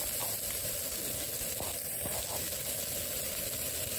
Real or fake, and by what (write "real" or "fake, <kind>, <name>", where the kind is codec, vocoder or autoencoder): real